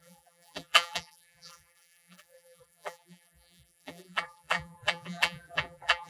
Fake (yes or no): yes